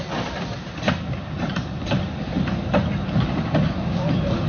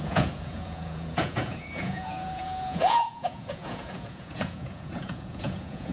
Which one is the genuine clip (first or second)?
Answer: first